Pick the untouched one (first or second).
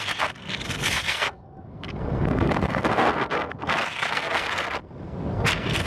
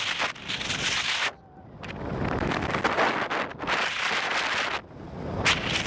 second